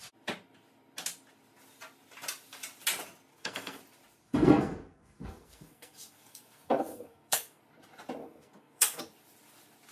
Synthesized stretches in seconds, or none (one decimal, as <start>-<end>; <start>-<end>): 3.3-3.8; 4.3-7.6; 8.2-9.0